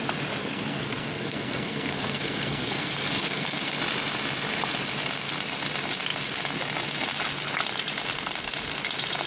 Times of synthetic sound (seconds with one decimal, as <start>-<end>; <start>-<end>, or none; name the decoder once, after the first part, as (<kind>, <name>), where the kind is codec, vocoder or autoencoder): 0.4-3.8 (codec, SNAC)